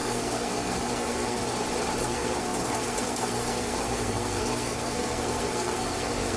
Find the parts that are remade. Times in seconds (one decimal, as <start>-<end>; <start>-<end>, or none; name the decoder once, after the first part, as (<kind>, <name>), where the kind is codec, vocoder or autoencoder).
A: 0.0-1.4 (codec, SNAC); 2.0-6.4